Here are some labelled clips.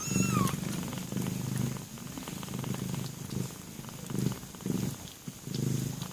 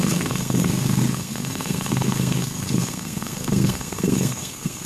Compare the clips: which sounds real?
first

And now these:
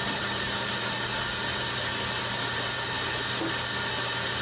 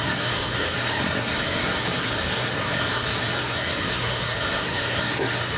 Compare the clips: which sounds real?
first